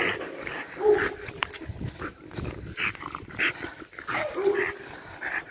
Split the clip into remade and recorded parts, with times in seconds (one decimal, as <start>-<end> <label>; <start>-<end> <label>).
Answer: 0.0-5.5 recorded